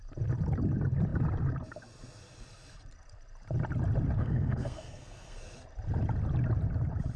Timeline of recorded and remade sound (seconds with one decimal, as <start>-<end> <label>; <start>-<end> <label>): 0.0-4.2 recorded; 4.2-5.4 remade; 5.4-7.2 recorded